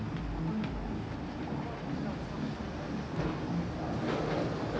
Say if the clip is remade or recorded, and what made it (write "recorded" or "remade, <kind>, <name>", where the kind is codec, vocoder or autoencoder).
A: recorded